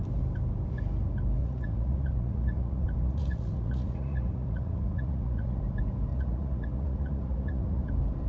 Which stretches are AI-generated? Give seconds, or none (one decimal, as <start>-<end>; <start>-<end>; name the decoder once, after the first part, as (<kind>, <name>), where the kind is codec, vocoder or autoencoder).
1.4-5.6 (vocoder, Vocos); 6.1-7.9